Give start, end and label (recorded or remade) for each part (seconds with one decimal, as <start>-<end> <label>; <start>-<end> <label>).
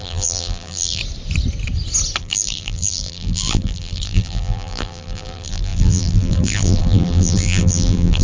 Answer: 0.0-1.0 remade; 1.0-2.2 recorded; 2.2-8.2 remade